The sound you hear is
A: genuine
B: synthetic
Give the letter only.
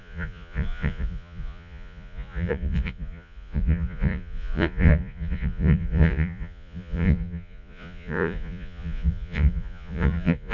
B